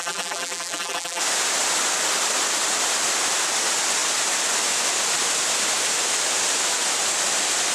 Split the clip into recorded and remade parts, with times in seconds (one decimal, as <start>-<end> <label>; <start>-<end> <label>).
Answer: 0.0-1.2 remade; 1.2-7.7 recorded

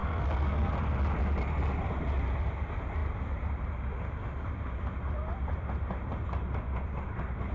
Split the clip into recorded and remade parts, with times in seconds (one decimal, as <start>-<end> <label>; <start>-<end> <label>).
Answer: 0.0-0.7 remade; 0.7-7.5 recorded

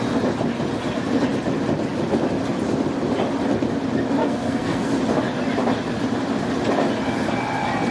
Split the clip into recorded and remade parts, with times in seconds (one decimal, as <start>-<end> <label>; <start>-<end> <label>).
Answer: 0.0-4.2 recorded; 4.2-4.9 remade; 4.9-7.9 recorded